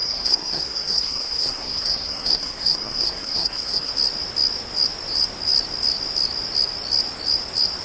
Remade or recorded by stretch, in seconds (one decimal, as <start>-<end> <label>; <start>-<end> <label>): 0.0-3.9 remade; 3.9-7.8 recorded